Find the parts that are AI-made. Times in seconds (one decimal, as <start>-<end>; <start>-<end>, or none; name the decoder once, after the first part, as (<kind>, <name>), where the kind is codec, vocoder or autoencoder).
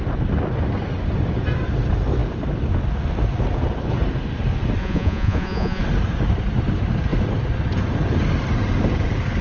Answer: 4.8-5.8 (vocoder, Vocos)